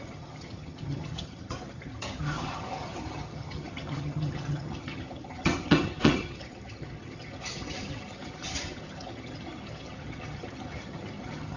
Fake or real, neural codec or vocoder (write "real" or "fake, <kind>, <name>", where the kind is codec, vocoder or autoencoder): fake, vocoder, HiFi-GAN